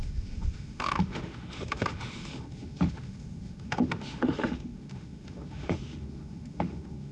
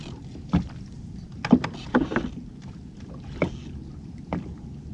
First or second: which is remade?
first